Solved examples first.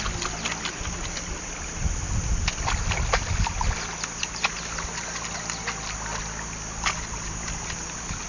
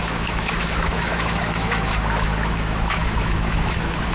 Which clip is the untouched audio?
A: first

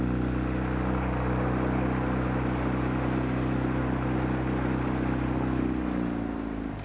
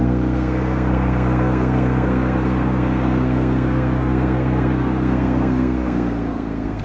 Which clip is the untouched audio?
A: first